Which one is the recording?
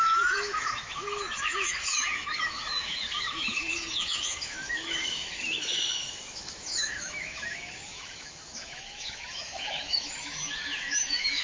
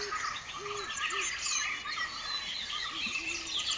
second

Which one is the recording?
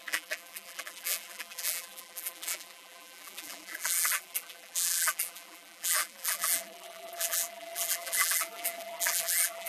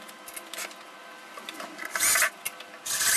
second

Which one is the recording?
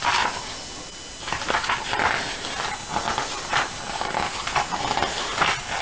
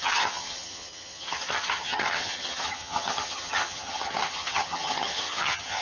first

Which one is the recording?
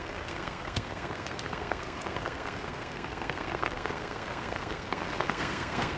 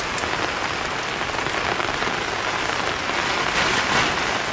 second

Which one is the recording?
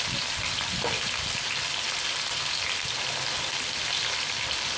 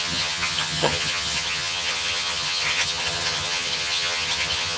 first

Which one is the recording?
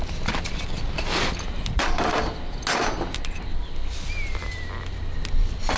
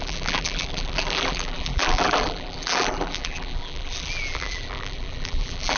first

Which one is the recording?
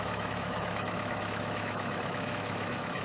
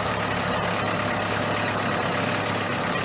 second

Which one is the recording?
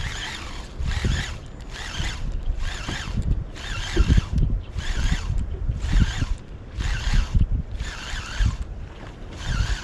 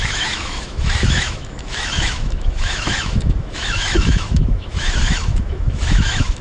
first